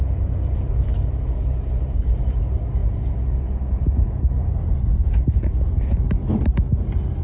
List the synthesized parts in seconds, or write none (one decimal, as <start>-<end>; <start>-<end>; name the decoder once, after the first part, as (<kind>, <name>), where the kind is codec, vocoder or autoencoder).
none